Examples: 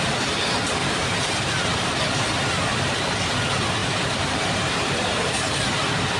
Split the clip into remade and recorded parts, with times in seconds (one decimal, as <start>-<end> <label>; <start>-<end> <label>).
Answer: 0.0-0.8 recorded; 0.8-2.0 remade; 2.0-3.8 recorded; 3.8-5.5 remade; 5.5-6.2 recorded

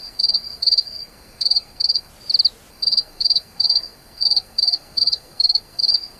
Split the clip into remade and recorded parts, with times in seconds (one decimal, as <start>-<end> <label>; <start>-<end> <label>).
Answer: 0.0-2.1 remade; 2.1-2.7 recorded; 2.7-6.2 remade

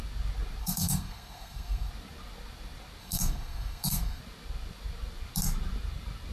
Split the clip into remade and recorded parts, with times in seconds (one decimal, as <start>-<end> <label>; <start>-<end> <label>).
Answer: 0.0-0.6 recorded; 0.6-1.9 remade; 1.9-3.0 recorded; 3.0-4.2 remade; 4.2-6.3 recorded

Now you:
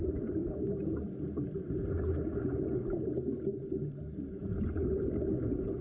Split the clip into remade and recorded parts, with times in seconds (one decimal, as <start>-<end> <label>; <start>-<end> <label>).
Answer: 0.0-5.8 recorded